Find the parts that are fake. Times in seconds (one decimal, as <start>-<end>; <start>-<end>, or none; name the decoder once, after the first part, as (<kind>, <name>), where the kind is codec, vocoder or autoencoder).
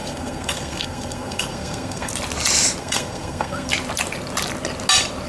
0.0-2.1 (codec, SNAC); 2.8-3.7